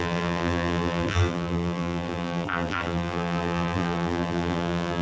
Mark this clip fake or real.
fake